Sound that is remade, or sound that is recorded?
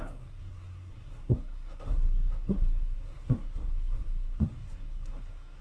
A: remade